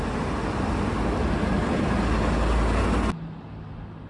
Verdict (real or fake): real